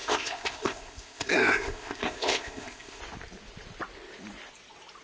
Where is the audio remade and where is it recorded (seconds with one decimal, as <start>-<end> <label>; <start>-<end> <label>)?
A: 0.0-3.0 remade; 3.0-5.0 recorded